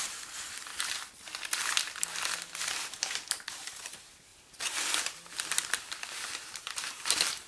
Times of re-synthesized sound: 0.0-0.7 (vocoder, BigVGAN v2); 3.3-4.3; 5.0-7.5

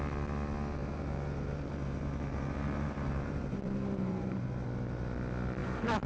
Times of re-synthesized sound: 0.8-4.5 (vocoder, BigVGAN v2); 5.6-6.1

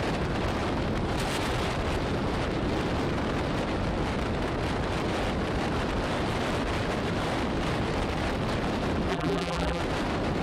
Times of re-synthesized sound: 9.1-9.8 (vocoder, BigVGAN v2)

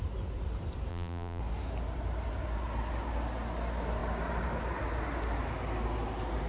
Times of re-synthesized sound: 0.9-1.4 (vocoder, BigVGAN v2)